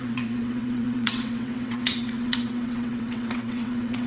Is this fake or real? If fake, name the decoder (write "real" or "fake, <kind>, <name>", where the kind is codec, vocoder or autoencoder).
fake, vocoder, WaveNeXt